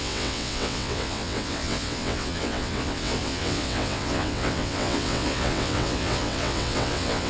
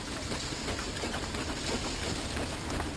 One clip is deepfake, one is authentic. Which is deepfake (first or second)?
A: first